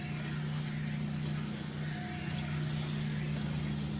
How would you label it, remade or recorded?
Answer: recorded